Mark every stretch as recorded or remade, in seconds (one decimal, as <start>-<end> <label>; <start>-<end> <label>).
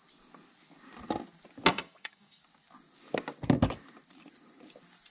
0.0-1.7 recorded; 1.7-2.4 remade; 2.4-5.1 recorded